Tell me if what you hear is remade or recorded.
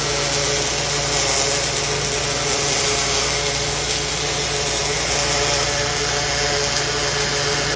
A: recorded